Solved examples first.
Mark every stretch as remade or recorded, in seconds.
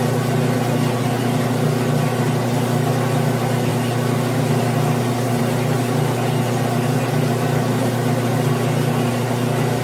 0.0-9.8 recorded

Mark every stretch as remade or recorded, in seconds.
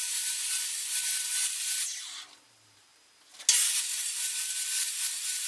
0.0-5.5 recorded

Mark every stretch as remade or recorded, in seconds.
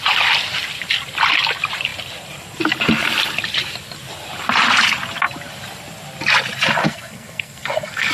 0.0-6.8 recorded; 6.8-8.1 remade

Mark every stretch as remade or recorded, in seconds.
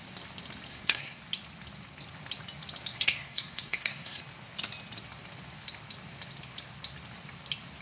0.0-0.7 recorded; 0.7-1.2 remade; 1.2-2.9 recorded; 2.9-4.2 remade; 4.2-7.8 recorded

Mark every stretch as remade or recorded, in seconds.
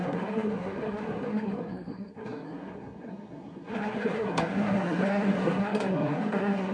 0.0-6.7 remade